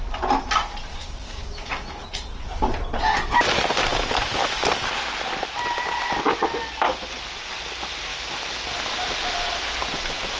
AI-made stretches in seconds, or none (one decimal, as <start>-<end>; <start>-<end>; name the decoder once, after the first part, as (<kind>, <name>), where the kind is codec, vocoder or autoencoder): 0.9-1.8 (codec, DAC)